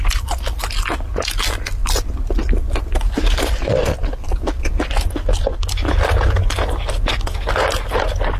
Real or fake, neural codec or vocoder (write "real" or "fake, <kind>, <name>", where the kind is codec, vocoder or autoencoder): real